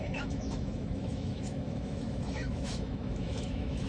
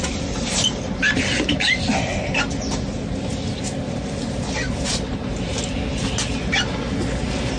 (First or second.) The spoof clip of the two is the first